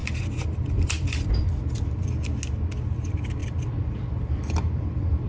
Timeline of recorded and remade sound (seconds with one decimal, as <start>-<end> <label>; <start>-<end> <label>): 0.0-2.2 remade; 2.2-3.4 recorded; 3.4-5.3 remade